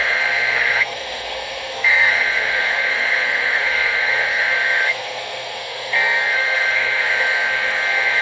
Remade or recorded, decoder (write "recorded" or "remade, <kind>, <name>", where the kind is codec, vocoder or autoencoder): remade, codec, SNAC